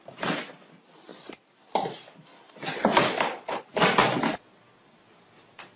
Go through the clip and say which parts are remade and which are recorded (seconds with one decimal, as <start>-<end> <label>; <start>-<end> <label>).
0.0-5.8 recorded